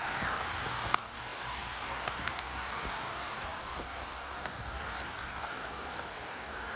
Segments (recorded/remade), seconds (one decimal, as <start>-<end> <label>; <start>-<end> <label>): 0.0-6.8 remade